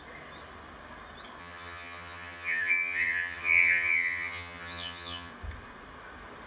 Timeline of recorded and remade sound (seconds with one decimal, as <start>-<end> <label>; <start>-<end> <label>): 0.0-1.4 recorded; 1.4-5.3 remade; 5.3-6.5 recorded